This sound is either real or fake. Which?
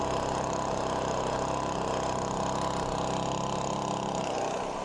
real